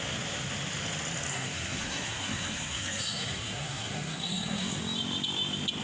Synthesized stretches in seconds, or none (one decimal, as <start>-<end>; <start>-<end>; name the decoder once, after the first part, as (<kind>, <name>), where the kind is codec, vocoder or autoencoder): 1.3-4.8 (codec, SNAC)